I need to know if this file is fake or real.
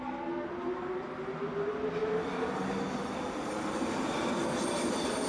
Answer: real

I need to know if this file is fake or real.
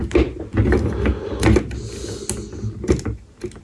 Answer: real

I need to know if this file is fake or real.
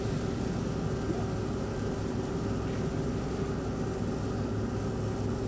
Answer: real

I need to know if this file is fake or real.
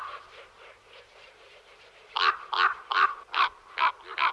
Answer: real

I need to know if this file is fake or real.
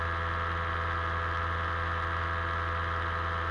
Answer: real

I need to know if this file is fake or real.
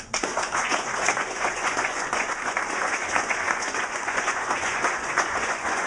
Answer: fake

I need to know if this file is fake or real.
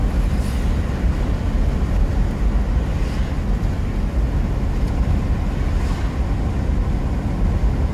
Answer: real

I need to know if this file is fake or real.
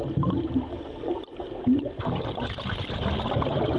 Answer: real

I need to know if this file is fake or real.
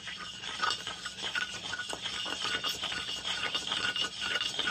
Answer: fake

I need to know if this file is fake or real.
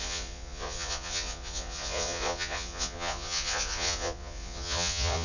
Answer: fake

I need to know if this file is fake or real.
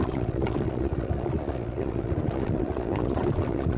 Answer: fake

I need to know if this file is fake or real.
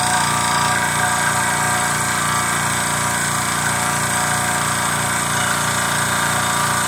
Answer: real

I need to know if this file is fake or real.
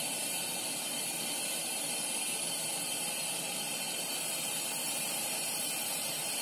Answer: fake